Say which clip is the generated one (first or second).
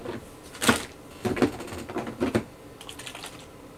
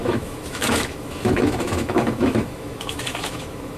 second